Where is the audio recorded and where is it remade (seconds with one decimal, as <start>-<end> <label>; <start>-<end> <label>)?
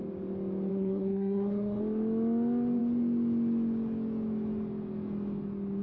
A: 0.0-0.7 recorded; 0.7-1.8 remade; 1.8-5.8 recorded